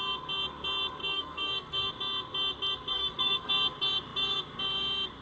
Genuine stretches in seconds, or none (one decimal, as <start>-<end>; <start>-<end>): 0.0-1.0; 1.9-2.9; 3.5-5.2